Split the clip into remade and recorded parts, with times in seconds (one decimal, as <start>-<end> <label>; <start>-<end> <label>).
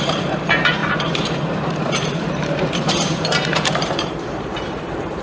0.0-5.2 remade